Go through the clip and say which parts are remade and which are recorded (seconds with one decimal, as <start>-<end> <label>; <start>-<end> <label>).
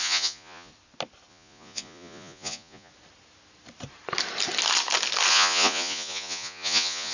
0.0-0.7 remade; 0.7-1.3 recorded; 1.3-2.9 remade; 2.9-5.3 recorded; 5.3-7.1 remade